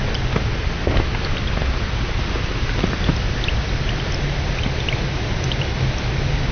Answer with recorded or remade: recorded